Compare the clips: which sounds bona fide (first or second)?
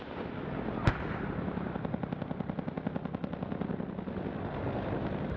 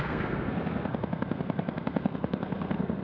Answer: first